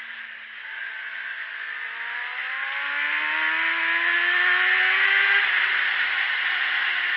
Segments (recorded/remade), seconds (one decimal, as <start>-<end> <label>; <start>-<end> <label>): 0.0-7.2 recorded